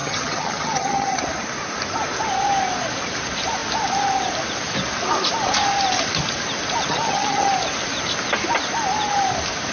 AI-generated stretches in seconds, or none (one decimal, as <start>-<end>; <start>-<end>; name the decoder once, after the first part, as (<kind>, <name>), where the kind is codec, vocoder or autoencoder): 0.0-1.2 (vocoder, HiFi-GAN); 6.9-7.5